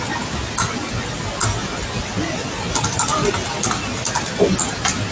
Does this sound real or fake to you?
real